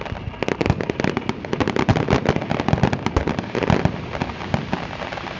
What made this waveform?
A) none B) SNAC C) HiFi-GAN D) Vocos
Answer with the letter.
A